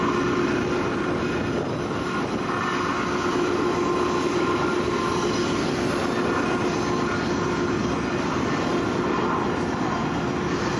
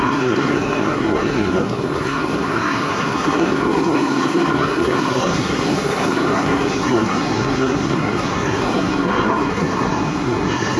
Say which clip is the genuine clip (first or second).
first